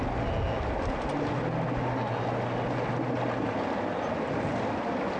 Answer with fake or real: real